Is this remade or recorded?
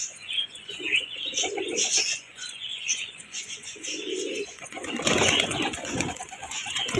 remade